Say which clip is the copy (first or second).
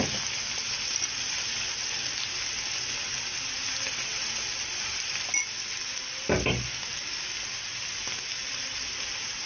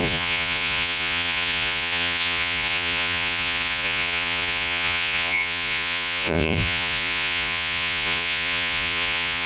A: second